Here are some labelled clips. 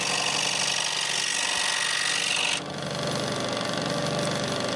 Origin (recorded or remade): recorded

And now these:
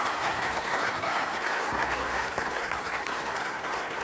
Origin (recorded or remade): remade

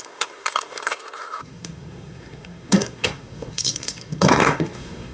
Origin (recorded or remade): remade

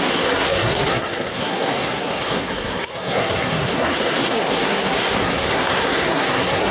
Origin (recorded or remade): remade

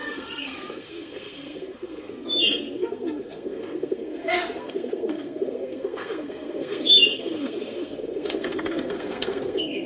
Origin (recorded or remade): remade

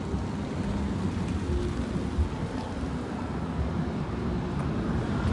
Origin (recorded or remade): recorded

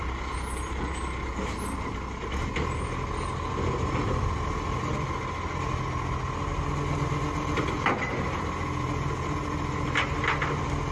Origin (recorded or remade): recorded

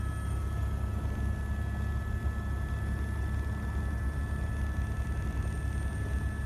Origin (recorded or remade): recorded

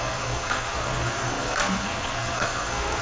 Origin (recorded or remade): remade